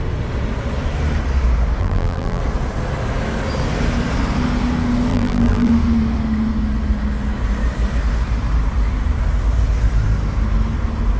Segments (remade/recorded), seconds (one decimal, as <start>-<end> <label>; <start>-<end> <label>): 0.0-1.8 recorded; 1.8-2.4 remade; 2.4-5.1 recorded; 5.1-5.7 remade; 5.7-11.2 recorded